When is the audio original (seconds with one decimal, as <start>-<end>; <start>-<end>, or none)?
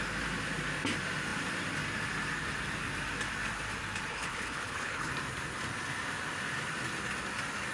0.0-4.1; 5.1-7.7